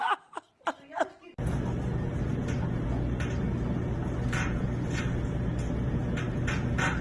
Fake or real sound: real